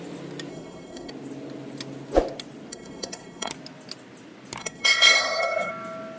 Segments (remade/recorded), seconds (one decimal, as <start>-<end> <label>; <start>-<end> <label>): 0.0-0.5 recorded; 0.5-1.1 remade; 1.1-2.7 recorded; 2.7-3.5 remade; 3.5-4.6 recorded; 4.6-5.7 remade; 5.7-6.2 recorded